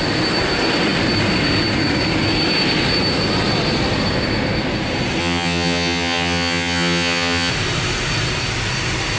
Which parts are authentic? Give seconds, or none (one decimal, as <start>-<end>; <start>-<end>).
0.0-5.2; 7.5-9.2